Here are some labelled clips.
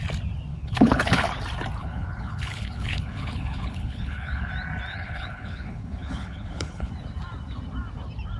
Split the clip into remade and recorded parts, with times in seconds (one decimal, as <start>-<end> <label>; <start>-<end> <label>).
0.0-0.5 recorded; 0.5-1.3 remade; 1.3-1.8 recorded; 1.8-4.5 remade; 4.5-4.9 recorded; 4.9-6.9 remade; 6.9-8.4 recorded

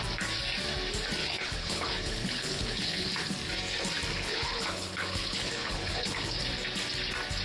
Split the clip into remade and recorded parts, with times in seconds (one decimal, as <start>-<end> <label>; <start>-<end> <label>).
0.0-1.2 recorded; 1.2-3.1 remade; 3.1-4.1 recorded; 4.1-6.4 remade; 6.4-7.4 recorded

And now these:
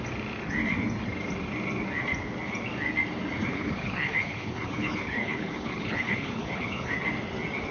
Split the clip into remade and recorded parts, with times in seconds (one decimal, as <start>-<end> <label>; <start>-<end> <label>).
0.0-3.5 recorded; 3.5-6.9 remade; 6.9-7.7 recorded

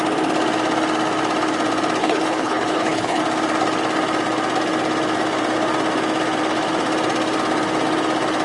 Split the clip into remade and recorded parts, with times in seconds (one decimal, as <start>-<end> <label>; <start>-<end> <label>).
0.0-2.0 recorded; 2.0-3.2 remade; 3.2-8.4 recorded

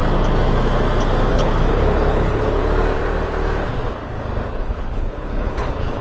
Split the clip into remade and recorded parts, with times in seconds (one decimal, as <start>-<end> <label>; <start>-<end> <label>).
0.0-1.3 recorded; 1.3-2.6 remade; 2.6-4.5 recorded; 4.5-6.0 remade

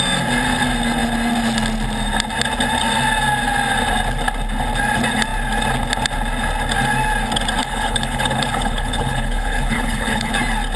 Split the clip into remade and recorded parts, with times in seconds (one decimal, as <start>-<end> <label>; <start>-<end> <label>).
0.0-7.6 recorded; 7.6-10.3 remade; 10.3-10.8 recorded